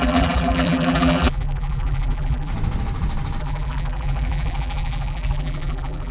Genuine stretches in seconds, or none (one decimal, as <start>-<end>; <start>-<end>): 2.5-3.4